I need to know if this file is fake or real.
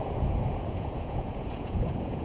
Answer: fake